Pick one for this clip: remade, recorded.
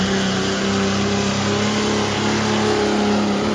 recorded